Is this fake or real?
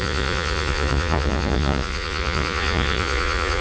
fake